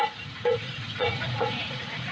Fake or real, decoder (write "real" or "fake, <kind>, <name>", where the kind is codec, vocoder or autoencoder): fake, vocoder, Vocos